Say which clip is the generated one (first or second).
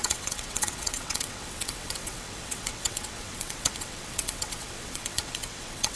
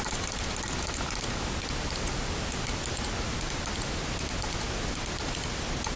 first